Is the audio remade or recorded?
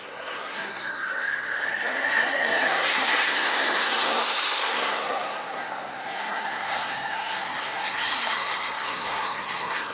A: remade